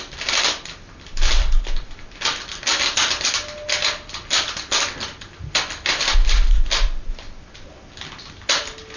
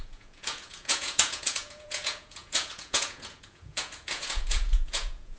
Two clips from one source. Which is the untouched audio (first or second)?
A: first